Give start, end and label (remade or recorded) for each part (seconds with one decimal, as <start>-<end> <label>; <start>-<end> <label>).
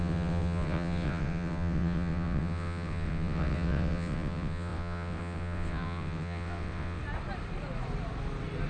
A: 0.0-7.0 remade; 7.0-8.7 recorded